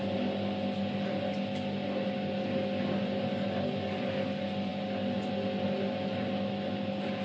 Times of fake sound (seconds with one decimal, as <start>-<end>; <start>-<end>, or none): none

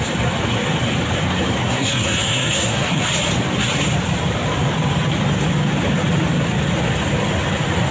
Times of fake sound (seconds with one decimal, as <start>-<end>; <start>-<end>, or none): 1.6-3.0

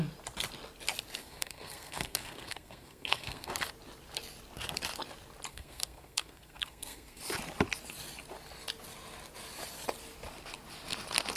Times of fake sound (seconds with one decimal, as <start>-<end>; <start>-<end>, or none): 1.2-3.5; 5.5-7.2

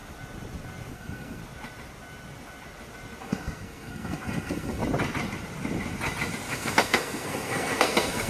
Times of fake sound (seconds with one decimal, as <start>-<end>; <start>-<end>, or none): 0.9-1.4; 3.2-4.8; 6.5-8.3

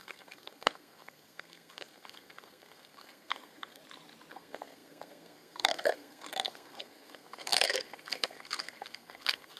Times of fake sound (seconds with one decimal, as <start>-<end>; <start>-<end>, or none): 0.0-3.8; 4.3-9.6